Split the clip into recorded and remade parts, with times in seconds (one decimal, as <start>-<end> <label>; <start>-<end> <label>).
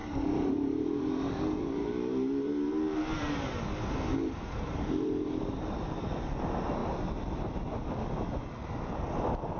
0.0-3.6 remade; 3.6-4.1 recorded; 4.1-5.4 remade; 5.4-9.6 recorded